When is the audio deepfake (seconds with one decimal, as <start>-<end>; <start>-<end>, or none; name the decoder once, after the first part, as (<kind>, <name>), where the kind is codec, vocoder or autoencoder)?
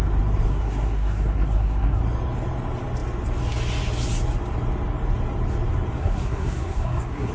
0.5-2.0 (codec, SNAC); 6.0-7.3